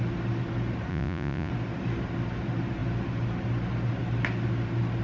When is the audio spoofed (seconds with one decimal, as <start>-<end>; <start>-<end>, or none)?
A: 0.9-1.5